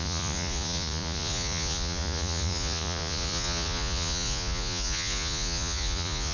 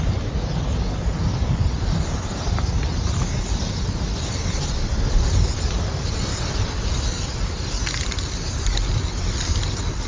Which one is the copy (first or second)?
first